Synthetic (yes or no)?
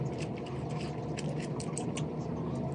no